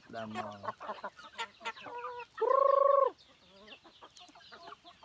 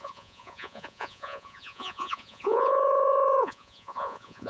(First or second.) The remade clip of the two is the second